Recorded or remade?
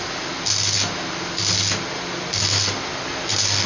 recorded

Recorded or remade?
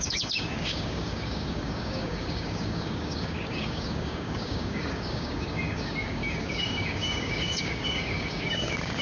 remade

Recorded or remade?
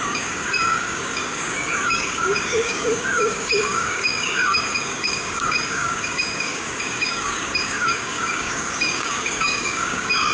remade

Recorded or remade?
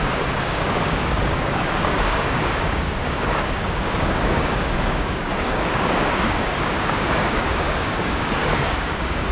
remade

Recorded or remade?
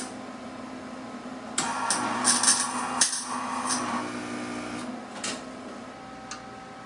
recorded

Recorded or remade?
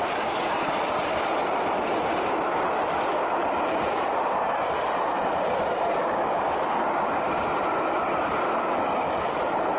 recorded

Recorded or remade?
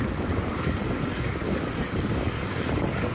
remade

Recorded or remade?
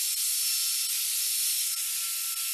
recorded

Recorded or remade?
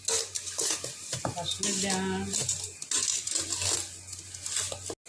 recorded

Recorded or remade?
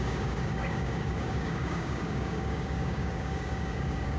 remade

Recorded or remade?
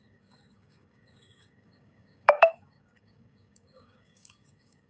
remade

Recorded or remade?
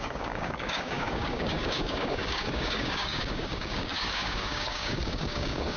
remade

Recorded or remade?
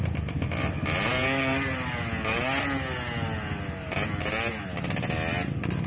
recorded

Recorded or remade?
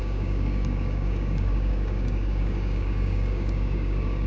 remade